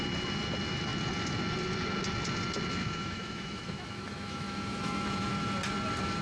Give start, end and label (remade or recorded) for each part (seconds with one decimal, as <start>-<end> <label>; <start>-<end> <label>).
0.0-2.8 recorded; 2.8-5.3 remade; 5.3-6.2 recorded